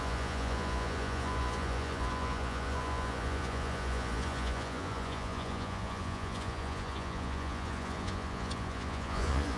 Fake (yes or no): yes